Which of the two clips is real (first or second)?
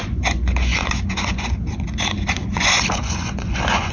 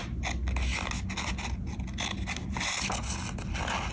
second